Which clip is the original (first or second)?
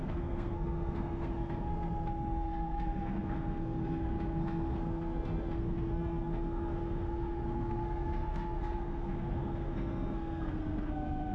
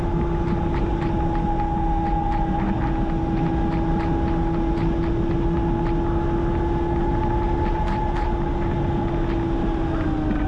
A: second